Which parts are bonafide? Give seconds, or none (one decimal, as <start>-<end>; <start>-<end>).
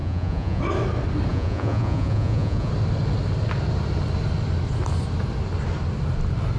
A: 0.6-1.3; 2.7-6.6